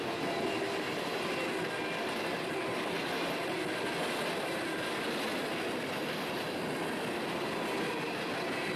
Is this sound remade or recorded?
recorded